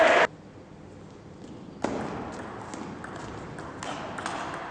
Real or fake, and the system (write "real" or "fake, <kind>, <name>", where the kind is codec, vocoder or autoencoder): real